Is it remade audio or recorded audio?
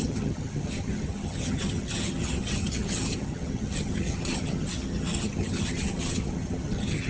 remade